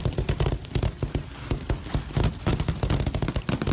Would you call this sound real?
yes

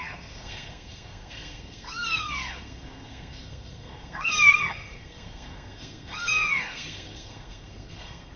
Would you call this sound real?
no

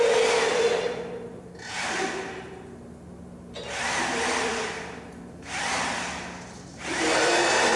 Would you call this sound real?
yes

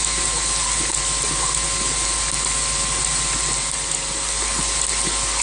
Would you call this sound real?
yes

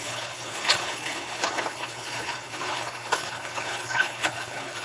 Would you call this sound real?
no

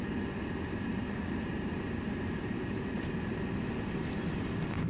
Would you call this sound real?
yes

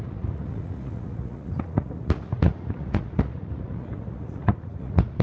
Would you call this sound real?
no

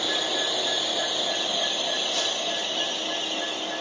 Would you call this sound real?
yes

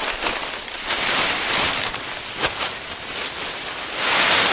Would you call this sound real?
no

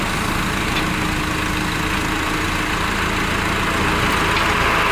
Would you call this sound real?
yes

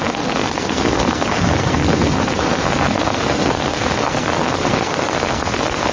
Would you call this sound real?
no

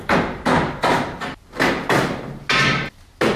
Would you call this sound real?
yes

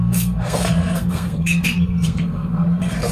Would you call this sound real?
no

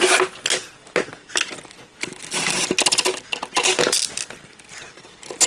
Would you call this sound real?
yes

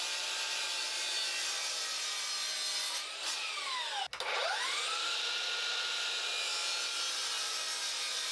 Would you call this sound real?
yes